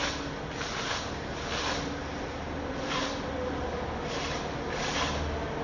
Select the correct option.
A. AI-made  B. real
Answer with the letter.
B